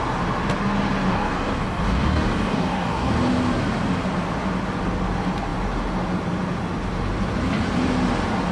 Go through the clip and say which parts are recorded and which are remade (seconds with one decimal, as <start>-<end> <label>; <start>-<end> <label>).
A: 0.0-1.1 recorded; 1.1-3.1 remade; 3.1-8.5 recorded